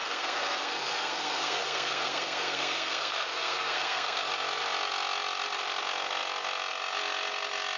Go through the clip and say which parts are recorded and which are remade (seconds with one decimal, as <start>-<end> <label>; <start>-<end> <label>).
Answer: 0.0-4.2 remade; 4.2-7.8 recorded